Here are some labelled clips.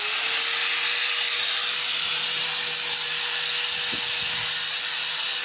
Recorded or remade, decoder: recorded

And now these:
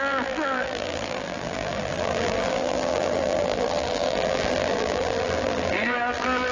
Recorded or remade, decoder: remade, vocoder, BigVGAN v2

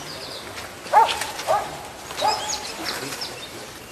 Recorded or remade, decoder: remade, vocoder, BigVGAN v2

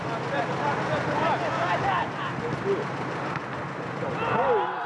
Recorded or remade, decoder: recorded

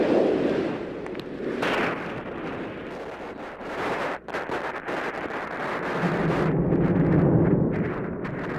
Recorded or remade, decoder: remade, vocoder, BigVGAN v2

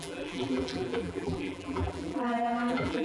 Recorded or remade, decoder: remade, vocoder, BigVGAN v2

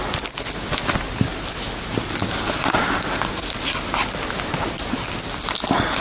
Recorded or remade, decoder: recorded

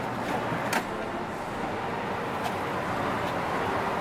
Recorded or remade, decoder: recorded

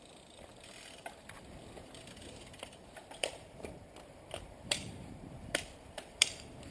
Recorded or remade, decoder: remade, vocoder, BigVGAN v2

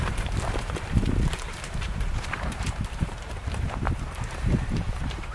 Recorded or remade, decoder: remade, vocoder, BigVGAN v2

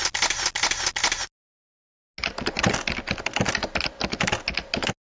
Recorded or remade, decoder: recorded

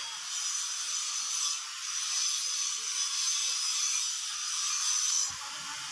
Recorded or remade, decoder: recorded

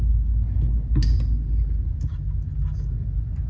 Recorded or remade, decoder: recorded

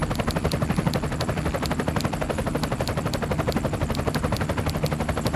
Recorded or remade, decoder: recorded